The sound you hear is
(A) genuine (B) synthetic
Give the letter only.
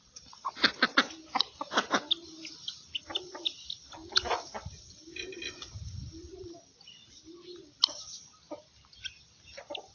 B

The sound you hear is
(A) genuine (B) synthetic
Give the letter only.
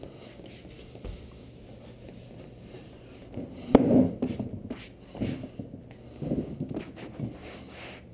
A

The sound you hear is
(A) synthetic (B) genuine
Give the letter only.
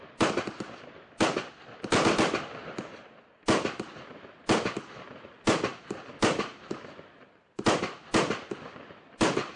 B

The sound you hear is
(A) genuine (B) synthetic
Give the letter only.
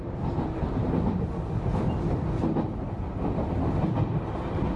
A